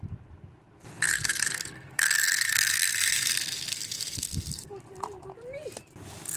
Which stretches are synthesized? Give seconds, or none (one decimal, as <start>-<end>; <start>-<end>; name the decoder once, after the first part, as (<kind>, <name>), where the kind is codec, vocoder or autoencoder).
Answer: 1.1-3.3 (codec, SNAC); 3.7-4.7

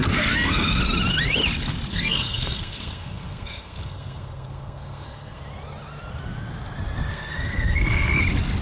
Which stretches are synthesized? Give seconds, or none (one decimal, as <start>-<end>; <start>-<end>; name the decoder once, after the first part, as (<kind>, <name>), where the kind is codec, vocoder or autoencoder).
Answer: 0.0-0.8 (codec, SNAC); 1.9-5.4; 7.1-8.2

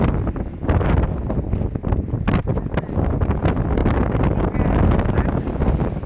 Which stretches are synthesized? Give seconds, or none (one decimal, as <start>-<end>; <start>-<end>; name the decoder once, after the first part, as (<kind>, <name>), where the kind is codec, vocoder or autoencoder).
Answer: none

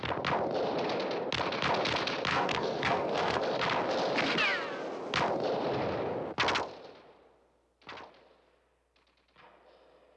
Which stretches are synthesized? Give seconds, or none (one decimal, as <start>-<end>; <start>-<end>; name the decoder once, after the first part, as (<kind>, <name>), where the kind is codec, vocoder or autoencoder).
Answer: 2.3-3.4 (codec, SNAC)

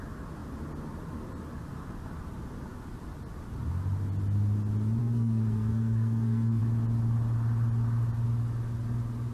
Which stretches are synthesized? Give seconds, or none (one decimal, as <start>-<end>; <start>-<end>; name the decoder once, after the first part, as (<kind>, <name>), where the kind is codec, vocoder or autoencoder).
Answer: 5.0-6.6 (codec, SNAC)

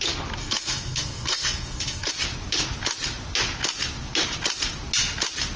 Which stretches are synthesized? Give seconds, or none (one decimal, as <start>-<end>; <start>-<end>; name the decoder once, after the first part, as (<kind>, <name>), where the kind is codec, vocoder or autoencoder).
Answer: 0.4-2.1 (codec, SNAC)

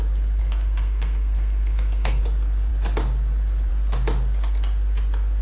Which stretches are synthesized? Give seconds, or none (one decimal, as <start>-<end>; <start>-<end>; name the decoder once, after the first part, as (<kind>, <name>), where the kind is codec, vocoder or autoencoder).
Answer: 0.4-2.2 (codec, SNAC)

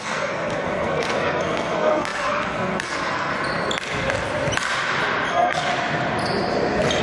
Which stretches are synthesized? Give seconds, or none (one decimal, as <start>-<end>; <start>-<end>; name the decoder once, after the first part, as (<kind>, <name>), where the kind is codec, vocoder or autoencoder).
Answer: 0.0-3.3 (codec, SNAC); 5.3-5.7